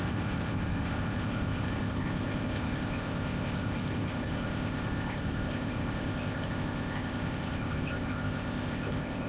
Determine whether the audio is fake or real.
fake